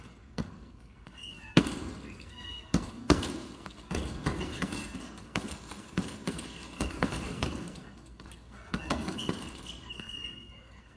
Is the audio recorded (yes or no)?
no